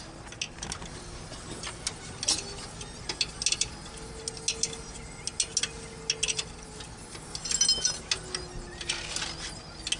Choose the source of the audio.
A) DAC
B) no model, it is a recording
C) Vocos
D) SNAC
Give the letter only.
B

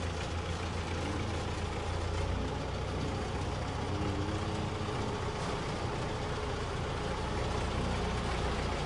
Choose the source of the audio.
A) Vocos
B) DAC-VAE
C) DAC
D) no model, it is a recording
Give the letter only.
D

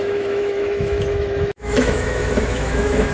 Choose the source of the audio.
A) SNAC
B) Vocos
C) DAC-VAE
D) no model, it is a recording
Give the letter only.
C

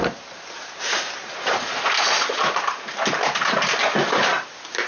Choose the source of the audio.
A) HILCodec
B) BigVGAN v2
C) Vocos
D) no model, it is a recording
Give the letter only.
D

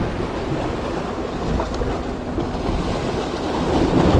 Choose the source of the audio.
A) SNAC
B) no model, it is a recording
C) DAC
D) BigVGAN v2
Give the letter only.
B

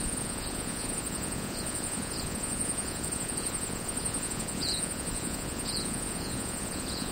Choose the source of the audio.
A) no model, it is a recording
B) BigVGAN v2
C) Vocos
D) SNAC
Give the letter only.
C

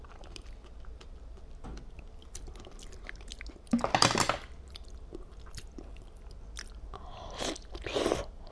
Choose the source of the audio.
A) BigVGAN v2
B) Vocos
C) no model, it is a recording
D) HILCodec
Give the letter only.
C